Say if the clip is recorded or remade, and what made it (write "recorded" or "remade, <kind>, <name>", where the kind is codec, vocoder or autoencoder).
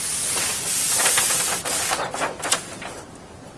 recorded